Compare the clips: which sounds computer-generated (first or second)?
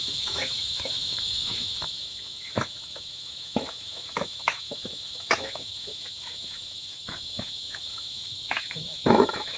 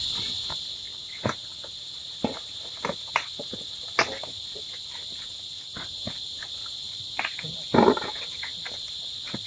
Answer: first